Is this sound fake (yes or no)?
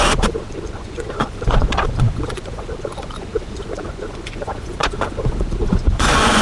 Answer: yes